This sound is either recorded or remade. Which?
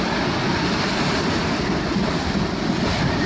recorded